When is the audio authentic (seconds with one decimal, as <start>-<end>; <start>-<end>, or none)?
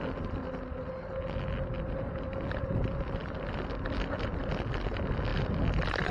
0.0-6.1